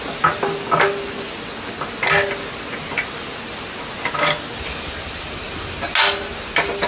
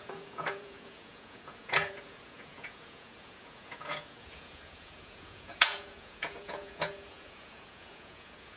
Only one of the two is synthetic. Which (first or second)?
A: second